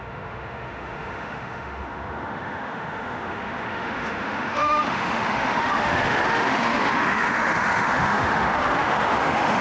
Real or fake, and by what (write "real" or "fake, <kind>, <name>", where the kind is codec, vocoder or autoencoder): fake, autoencoder, DAC-VAE